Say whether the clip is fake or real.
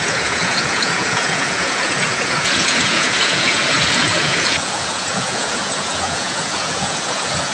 fake